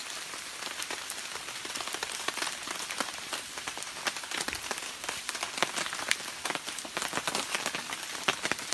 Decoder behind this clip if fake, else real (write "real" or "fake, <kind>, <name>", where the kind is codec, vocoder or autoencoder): real